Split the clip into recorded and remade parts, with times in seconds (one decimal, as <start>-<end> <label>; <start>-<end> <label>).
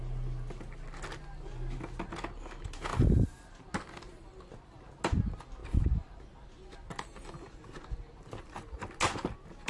0.0-5.6 recorded; 5.6-6.2 remade; 6.2-9.7 recorded